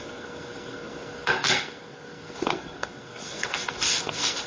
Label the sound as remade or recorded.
remade